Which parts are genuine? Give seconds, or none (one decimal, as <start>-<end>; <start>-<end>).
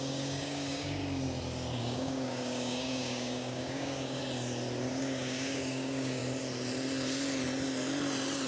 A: 1.0-1.8; 4.2-4.9; 6.2-8.5